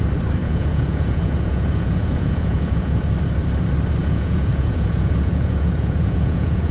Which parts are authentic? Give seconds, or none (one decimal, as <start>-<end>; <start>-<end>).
0.0-0.4; 3.0-4.0